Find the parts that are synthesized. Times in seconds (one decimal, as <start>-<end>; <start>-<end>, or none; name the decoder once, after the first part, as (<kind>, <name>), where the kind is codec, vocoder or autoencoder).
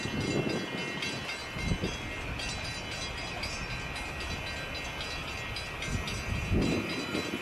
none